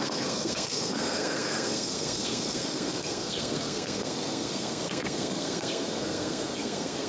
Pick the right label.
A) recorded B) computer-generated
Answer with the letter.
B